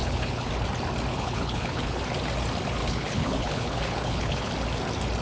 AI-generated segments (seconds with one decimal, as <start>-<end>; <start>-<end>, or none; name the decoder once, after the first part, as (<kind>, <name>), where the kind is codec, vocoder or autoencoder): 0.0-0.5 (codec, HILCodec); 1.1-2.0; 2.8-4.5